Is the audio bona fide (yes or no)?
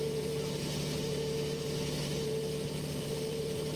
no